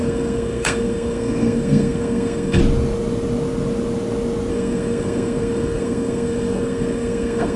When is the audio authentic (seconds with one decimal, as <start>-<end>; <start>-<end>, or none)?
2.6-4.5